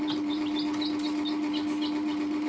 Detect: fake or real fake